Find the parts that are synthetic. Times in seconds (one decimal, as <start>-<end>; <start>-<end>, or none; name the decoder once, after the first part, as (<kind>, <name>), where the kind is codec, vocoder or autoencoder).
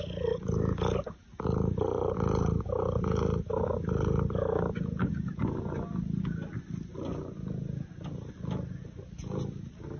none